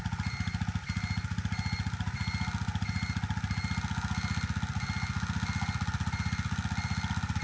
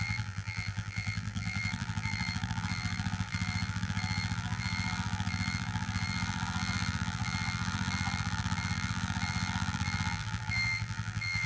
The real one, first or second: first